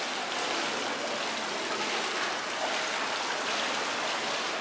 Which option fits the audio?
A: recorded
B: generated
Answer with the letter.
A